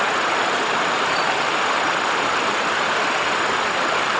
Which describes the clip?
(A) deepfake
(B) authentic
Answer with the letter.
B